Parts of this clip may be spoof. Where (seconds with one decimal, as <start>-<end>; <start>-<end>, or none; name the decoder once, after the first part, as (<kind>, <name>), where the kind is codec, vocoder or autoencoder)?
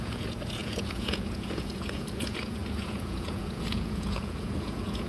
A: 0.0-5.1 (vocoder, Vocos)